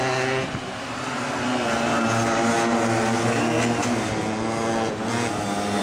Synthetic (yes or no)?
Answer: no